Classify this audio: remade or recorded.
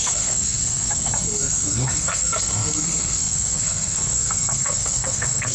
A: remade